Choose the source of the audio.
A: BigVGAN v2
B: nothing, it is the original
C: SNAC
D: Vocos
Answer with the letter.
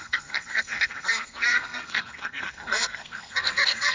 C